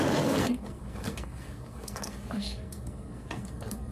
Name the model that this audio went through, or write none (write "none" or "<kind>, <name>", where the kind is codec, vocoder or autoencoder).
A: codec, SNAC